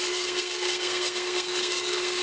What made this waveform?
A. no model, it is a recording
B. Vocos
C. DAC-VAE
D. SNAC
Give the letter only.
D